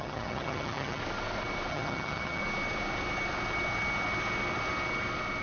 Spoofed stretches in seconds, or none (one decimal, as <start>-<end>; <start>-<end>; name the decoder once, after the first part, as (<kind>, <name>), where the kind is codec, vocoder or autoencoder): 0.0-1.0 (vocoder, HiFi-GAN); 1.7-2.4